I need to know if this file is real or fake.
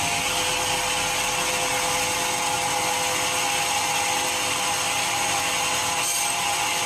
real